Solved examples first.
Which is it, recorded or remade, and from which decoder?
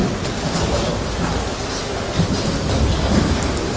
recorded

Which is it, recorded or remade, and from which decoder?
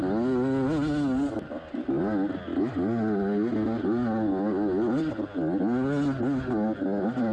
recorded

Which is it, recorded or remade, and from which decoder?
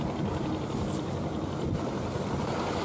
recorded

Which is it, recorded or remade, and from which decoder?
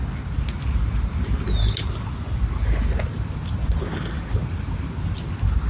recorded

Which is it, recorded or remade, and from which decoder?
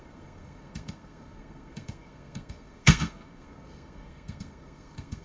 remade, codec, SNAC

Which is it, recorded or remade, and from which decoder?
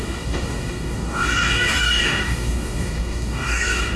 remade, codec, DAC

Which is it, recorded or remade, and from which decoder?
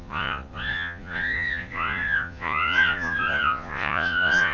remade, vocoder, Vocos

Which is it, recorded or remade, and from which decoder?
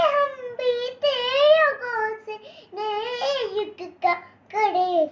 recorded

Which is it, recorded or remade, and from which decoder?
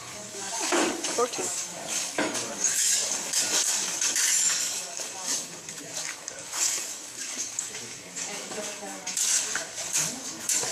remade, codec, DAC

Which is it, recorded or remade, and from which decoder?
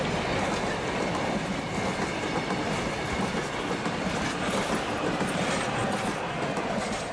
recorded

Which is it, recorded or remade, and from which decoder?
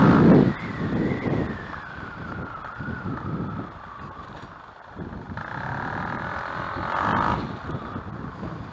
recorded